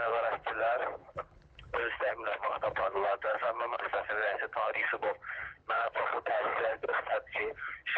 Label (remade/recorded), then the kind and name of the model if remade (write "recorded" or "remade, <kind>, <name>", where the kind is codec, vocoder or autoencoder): remade, codec, HILCodec